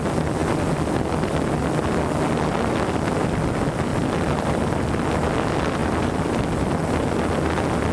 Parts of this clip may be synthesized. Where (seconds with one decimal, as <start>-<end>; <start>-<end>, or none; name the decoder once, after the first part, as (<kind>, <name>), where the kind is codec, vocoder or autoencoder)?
3.9-4.8 (vocoder, BigVGAN v2); 5.8-6.4